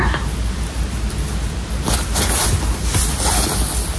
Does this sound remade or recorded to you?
recorded